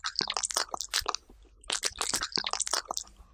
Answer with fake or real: real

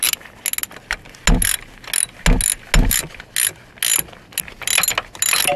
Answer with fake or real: real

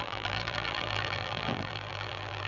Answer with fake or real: fake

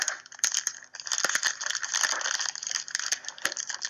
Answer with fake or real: fake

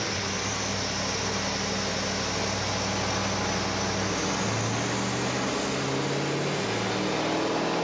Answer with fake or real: real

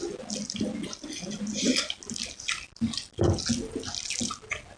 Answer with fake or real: real